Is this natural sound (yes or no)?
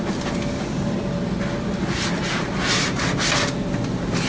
yes